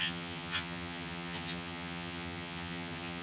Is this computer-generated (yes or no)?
yes